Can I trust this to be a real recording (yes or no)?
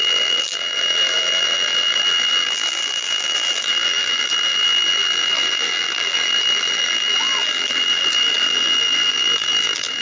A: no